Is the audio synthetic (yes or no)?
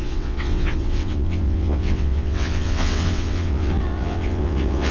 yes